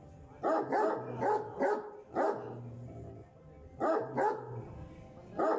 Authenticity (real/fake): real